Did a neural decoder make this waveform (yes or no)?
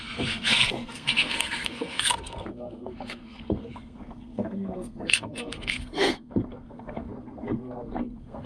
yes